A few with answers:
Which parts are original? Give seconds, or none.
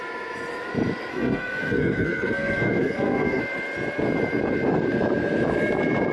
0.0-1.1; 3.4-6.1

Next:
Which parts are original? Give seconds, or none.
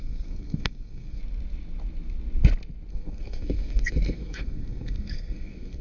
1.2-2.9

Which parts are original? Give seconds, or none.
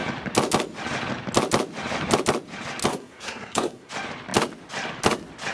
0.0-2.9; 3.9-5.5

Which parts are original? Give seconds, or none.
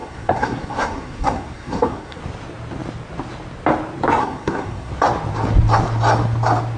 2.2-4.2; 4.9-6.8